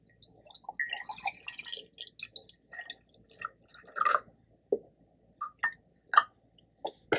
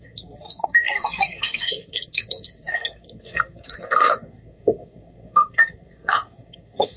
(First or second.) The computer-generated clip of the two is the second